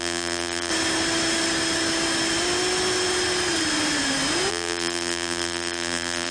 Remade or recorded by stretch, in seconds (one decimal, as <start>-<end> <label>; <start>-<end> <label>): 0.0-0.7 remade; 0.7-4.5 recorded; 4.5-6.3 remade